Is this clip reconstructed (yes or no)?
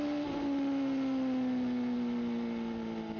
no